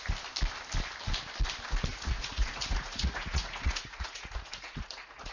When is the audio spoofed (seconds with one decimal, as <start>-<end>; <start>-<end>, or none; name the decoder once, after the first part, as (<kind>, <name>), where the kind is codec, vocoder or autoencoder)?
1.9-5.3 (vocoder, Vocos)